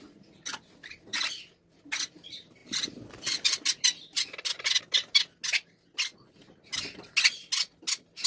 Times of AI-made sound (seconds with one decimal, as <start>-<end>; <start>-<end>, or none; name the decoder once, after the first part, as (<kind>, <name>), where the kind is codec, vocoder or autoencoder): none